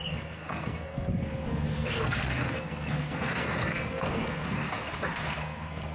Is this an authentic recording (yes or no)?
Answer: no